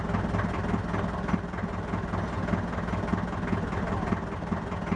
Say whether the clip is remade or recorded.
recorded